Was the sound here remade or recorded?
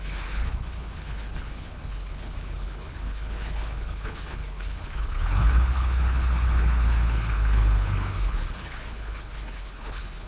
remade